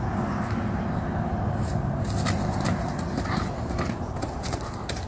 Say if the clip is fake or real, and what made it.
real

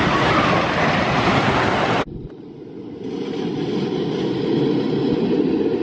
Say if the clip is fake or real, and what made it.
real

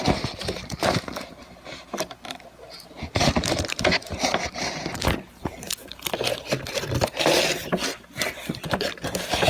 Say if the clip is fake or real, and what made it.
fake, vocoder, BigVGAN v2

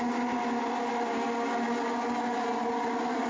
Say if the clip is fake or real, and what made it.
real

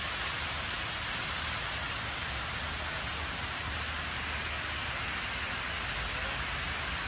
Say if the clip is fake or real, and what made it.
real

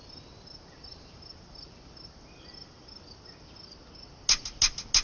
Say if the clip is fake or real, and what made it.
real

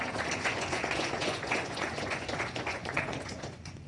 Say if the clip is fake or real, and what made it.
fake, vocoder, Vocos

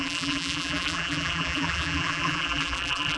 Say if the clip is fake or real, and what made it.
fake, vocoder, BigVGAN v2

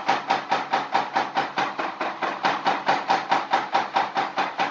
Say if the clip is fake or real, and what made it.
real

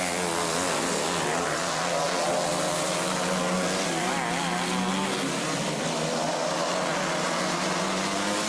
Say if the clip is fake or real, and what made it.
real